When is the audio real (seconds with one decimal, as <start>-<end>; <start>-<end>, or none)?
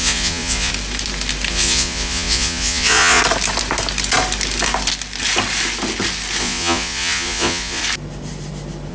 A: 0.7-1.5; 3.2-6.4; 7.8-8.9